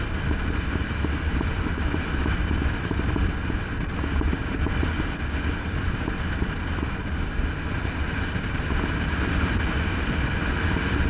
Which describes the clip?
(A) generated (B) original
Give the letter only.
B